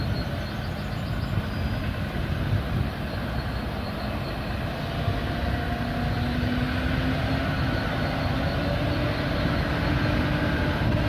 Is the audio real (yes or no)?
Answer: yes